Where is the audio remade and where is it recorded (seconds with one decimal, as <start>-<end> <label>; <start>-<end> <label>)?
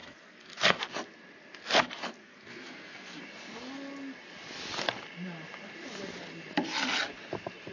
0.0-0.8 remade; 0.8-2.2 recorded; 2.2-3.2 remade; 3.2-7.7 recorded